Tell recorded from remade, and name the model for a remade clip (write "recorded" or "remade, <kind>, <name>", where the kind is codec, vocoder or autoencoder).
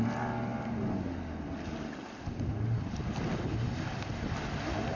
recorded